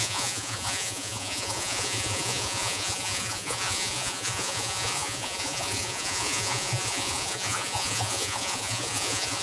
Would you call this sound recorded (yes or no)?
no